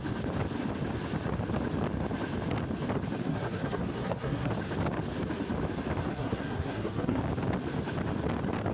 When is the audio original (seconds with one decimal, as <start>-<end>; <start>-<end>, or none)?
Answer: 0.0-3.2; 4.5-6.1; 7.2-8.7